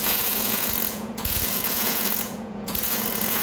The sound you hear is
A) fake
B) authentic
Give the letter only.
A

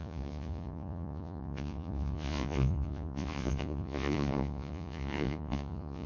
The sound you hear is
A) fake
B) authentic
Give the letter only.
A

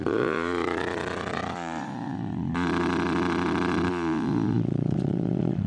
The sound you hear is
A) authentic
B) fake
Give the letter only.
B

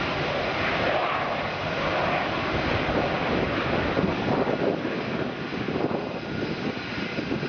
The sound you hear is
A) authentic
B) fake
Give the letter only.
A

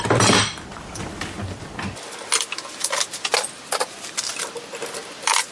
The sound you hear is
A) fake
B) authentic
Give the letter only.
B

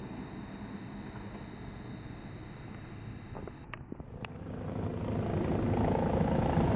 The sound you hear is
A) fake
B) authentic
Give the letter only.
B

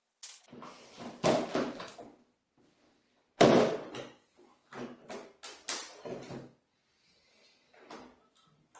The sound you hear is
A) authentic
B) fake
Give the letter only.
A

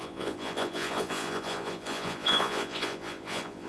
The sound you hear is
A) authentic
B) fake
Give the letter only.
B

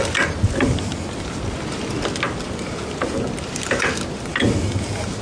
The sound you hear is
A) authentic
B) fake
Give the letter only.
A